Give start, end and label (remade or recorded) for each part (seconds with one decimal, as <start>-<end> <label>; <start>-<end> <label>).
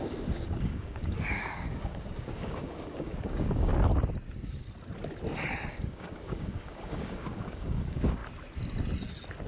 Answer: 0.0-3.7 remade; 3.7-5.7 recorded; 5.7-8.2 remade; 8.2-9.5 recorded